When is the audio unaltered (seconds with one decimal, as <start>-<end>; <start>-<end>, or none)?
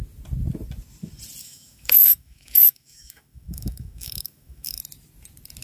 0.0-1.4; 4.8-5.6